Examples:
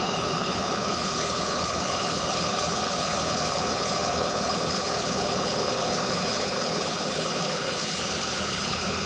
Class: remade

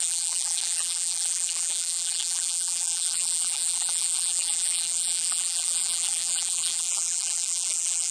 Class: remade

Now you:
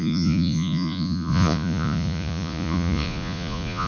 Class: remade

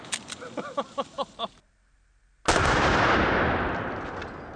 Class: recorded